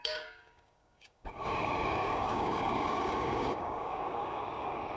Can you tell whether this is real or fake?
fake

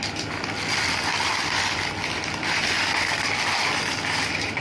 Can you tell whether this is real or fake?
real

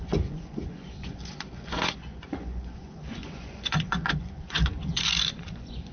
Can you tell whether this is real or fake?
fake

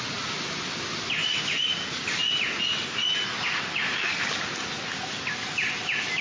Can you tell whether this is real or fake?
real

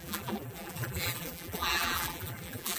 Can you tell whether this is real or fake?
fake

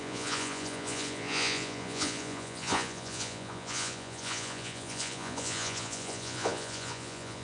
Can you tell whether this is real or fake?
fake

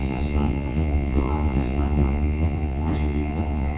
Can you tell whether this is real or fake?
fake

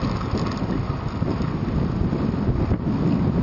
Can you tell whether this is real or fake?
real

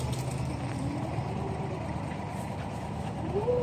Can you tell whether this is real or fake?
real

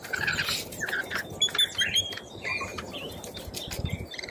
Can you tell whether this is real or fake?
real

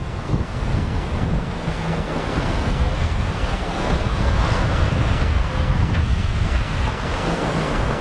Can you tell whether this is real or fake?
fake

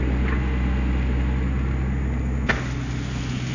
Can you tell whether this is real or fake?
real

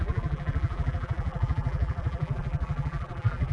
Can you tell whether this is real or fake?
fake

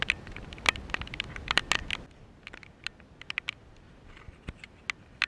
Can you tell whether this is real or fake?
real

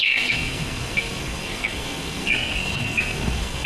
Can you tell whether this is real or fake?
fake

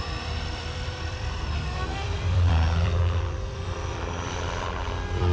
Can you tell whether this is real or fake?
fake